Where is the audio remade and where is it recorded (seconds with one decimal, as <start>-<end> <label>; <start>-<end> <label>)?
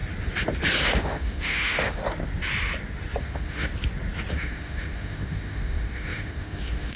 0.0-0.8 recorded; 0.8-2.0 remade; 2.0-3.2 recorded; 3.2-3.7 remade; 3.7-4.3 recorded; 4.3-7.0 remade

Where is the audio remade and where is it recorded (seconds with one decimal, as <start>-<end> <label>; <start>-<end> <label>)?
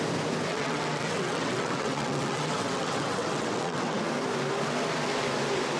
0.0-0.5 recorded; 0.5-4.0 remade; 4.0-5.8 recorded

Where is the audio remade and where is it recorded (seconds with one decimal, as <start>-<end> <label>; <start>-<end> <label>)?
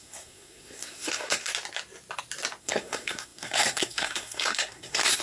0.0-1.5 remade; 1.5-2.6 recorded; 2.6-5.2 remade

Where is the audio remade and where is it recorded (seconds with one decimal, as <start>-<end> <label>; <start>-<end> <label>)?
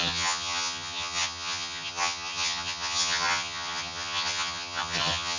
0.0-5.4 remade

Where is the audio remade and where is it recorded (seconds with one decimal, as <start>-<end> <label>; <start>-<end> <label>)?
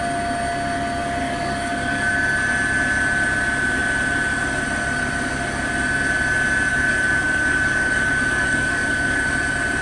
0.0-1.2 recorded; 1.2-2.1 remade; 2.1-6.7 recorded; 6.7-9.3 remade; 9.3-9.8 recorded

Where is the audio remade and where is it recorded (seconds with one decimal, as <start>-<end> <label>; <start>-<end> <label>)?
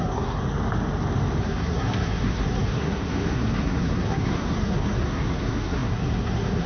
0.0-0.4 remade; 0.4-1.4 recorded; 1.4-6.7 remade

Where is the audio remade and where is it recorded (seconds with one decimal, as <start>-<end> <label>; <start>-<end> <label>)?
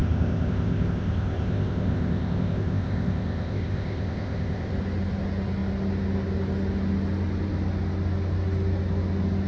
0.0-4.7 remade; 4.7-9.5 recorded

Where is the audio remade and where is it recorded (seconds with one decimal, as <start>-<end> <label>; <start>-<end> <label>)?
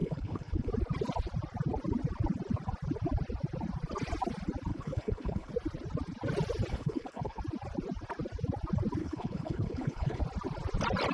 0.0-0.7 remade; 0.7-4.7 recorded; 4.7-5.5 remade; 5.5-6.7 recorded; 6.7-7.4 remade; 7.4-9.0 recorded; 9.0-10.2 remade; 10.2-11.1 recorded